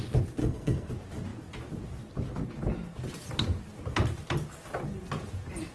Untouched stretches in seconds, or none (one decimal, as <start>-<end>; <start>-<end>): 0.0-0.4; 0.9-5.7